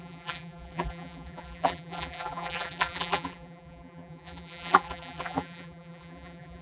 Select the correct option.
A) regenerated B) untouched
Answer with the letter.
A